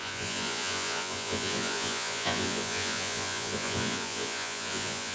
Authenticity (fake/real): fake